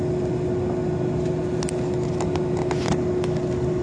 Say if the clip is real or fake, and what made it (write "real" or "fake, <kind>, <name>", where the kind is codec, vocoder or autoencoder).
real